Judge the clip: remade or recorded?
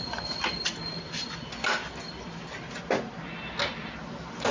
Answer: recorded